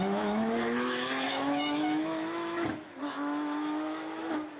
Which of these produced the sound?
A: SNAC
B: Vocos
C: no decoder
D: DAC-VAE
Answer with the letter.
D